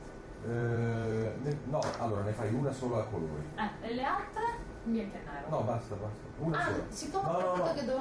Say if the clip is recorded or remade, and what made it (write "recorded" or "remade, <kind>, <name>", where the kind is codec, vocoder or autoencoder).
remade, vocoder, BigVGAN v2